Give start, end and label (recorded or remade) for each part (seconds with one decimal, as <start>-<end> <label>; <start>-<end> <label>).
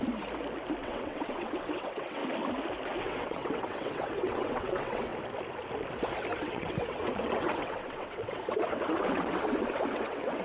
0.0-0.8 recorded; 0.8-2.2 remade; 2.2-3.0 recorded; 3.0-5.1 remade; 5.1-6.3 recorded; 6.3-10.4 remade